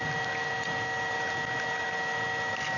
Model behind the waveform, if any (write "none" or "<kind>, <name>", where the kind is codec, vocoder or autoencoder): none